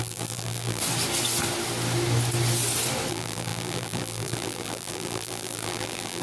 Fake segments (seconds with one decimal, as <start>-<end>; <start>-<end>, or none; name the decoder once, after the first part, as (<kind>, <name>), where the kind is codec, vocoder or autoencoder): 0.0-0.8 (vocoder, BigVGAN v2); 3.1-6.2